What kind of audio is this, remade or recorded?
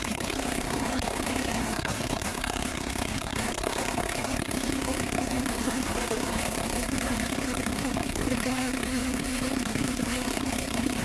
remade